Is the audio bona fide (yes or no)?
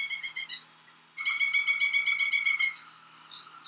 yes